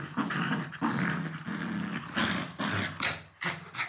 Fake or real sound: real